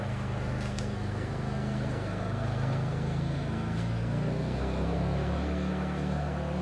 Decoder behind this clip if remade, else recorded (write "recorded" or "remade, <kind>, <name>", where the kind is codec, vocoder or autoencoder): remade, codec, SNAC